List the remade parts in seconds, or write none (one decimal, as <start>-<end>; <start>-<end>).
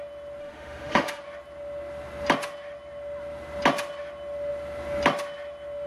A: 0.4-1.2